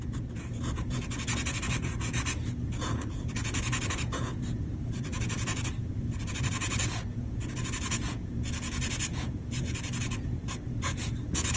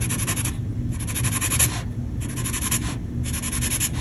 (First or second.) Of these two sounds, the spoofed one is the first